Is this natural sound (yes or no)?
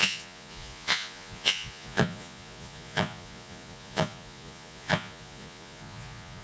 no